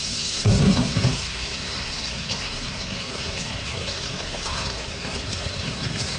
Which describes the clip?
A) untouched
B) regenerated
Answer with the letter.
B